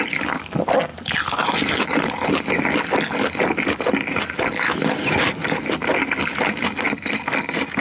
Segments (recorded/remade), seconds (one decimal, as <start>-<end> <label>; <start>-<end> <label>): 0.0-7.8 recorded